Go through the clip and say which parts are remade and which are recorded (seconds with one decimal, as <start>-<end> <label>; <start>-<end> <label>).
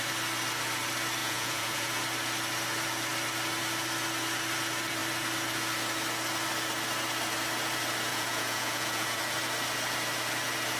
0.0-1.2 recorded; 1.2-1.9 remade; 1.9-8.1 recorded; 8.1-9.2 remade; 9.2-10.8 recorded